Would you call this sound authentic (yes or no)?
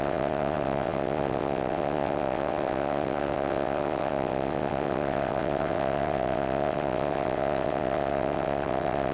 no